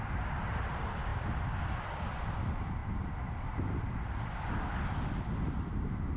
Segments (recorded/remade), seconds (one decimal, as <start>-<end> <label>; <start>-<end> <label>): 0.0-6.2 remade